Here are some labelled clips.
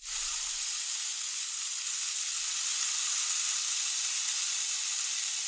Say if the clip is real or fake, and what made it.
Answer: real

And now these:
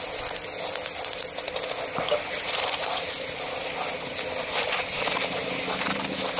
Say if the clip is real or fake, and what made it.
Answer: real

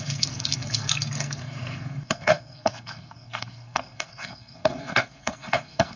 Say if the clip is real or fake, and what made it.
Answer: fake, codec, SNAC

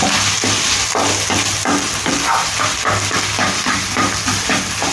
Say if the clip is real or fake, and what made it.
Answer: real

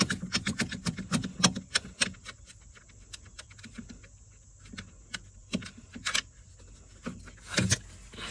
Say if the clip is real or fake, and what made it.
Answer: real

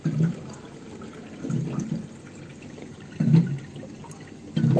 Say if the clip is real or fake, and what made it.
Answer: real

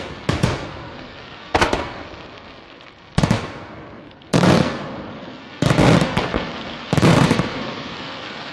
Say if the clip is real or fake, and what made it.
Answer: fake, codec, SNAC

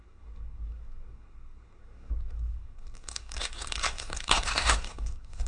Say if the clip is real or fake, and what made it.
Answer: fake, codec, SNAC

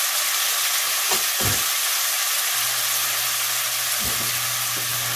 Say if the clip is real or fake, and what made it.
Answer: real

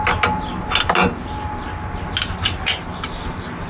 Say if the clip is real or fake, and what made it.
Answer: real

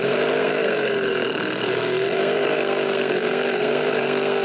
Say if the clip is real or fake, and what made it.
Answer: fake, codec, SNAC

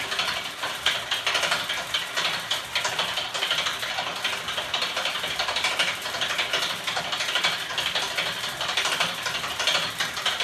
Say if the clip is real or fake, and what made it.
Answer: real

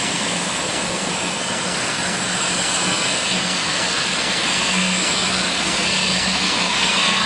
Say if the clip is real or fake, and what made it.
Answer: fake, codec, SNAC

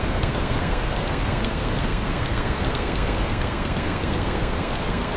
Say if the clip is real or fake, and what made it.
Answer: fake, codec, SNAC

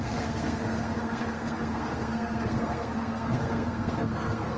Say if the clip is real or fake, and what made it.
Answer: fake, codec, SNAC